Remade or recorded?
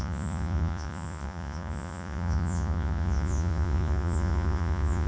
remade